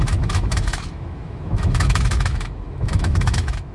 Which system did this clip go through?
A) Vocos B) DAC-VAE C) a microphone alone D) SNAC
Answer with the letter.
B